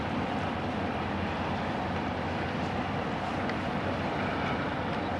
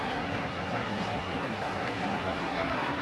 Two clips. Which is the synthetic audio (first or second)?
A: second